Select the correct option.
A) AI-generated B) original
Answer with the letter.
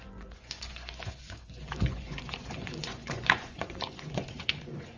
A